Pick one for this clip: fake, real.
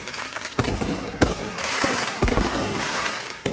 fake